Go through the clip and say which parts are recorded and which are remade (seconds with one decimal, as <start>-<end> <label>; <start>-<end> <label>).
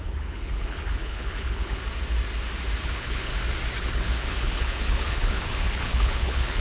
0.0-1.8 remade; 1.8-2.8 recorded; 2.8-3.3 remade; 3.3-3.8 recorded; 3.8-6.6 remade